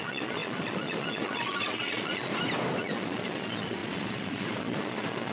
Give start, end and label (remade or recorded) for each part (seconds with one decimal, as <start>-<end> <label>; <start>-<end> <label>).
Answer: 0.0-2.3 remade; 2.3-2.8 recorded; 2.8-5.3 remade